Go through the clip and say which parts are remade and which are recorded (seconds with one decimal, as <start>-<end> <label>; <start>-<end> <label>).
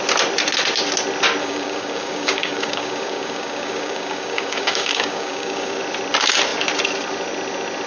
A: 0.0-1.4 recorded; 1.4-5.8 remade; 5.8-7.9 recorded